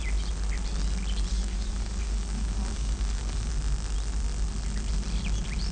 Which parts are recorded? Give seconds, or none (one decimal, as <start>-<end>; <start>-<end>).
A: 0.0-1.3; 3.5-5.7